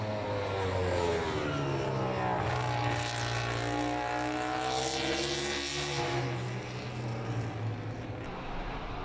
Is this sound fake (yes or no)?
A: no